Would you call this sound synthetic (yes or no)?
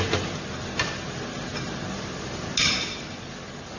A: no